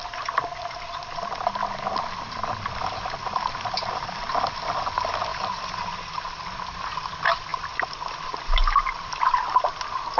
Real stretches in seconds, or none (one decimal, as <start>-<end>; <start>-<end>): 0.0-10.2